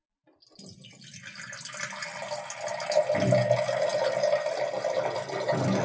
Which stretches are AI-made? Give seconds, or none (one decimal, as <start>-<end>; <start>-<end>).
none

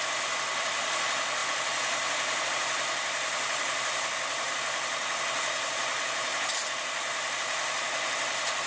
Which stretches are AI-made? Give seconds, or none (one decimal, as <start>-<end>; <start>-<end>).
none

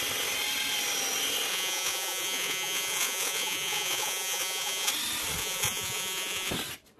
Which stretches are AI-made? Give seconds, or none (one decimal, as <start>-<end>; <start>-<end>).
1.5-4.9; 5.4-6.5